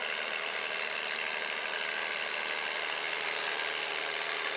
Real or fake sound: real